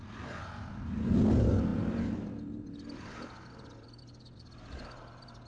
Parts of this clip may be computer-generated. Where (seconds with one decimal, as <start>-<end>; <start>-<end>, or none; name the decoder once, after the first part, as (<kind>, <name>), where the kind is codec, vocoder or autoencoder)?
none